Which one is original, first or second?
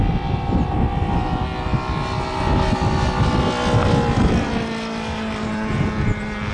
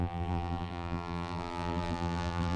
first